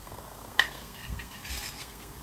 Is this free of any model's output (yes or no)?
no